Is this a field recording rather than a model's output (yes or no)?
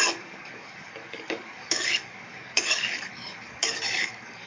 no